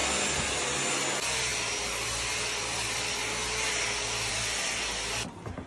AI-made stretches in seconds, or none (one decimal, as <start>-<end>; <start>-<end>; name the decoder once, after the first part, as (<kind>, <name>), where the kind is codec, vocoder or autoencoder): none